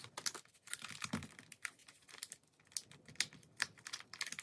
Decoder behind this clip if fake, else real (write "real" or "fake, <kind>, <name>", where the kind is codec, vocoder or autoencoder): real